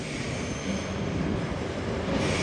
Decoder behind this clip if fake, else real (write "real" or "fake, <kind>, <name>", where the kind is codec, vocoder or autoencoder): real